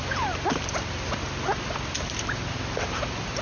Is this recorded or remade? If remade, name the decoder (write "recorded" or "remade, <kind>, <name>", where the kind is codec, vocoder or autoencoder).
recorded